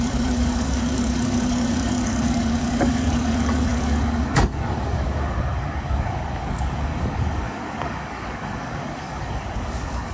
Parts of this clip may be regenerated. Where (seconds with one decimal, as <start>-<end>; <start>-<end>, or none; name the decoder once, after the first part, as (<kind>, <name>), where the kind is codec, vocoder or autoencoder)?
0.0-10.1 (codec, DAC)